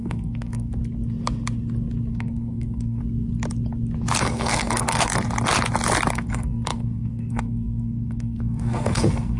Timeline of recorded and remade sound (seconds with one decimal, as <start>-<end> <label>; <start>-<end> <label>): 0.0-0.8 remade; 0.8-2.1 recorded; 2.1-3.0 remade; 3.0-4.2 recorded; 4.2-5.1 remade; 5.1-6.1 recorded; 6.1-9.4 remade